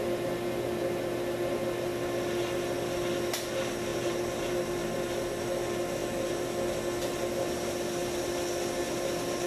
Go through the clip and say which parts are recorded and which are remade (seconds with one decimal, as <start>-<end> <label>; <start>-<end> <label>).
0.0-3.9 recorded; 3.9-4.8 remade; 4.8-6.0 recorded; 6.0-6.5 remade; 6.5-9.5 recorded